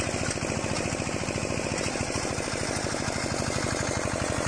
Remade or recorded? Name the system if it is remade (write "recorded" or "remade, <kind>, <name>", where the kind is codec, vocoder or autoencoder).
recorded